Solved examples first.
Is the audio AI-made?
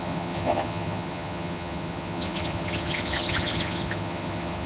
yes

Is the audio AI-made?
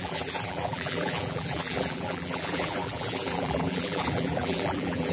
yes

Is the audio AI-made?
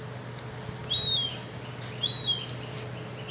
no